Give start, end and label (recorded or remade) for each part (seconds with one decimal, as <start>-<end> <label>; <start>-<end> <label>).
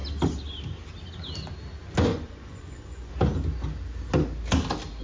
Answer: 0.0-2.1 recorded; 2.1-3.1 remade; 3.1-5.0 recorded